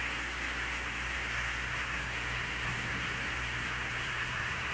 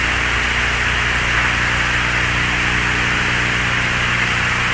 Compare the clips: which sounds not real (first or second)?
first